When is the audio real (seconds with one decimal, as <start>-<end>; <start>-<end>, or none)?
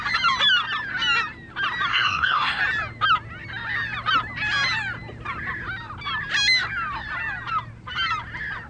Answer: 0.0-1.9; 2.6-8.7